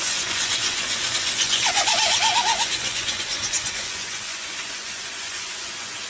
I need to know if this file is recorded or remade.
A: remade